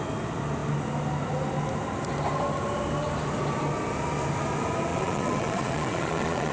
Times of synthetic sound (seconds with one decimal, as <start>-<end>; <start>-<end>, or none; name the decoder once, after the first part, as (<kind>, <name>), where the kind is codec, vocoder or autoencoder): 4.9-6.5 (vocoder, Vocos)